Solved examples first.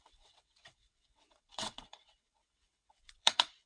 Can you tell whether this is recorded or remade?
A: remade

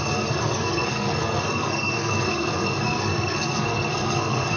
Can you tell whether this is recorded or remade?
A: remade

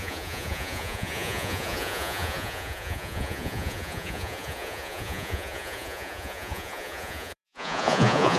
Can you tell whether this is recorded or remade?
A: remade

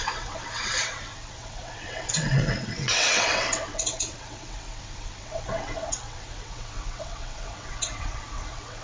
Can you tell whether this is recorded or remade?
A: remade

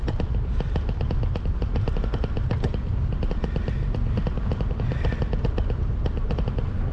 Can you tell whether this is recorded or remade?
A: recorded